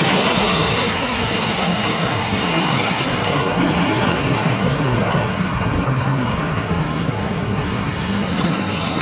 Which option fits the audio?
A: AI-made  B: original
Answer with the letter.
A